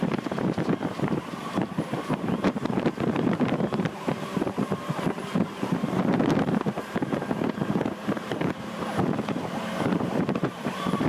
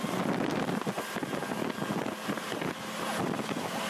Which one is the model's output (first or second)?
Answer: first